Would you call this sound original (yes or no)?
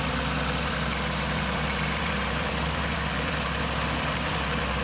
no